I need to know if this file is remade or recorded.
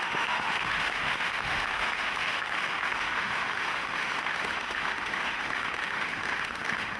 remade